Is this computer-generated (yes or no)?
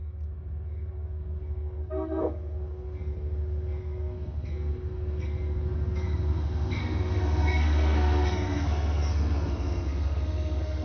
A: yes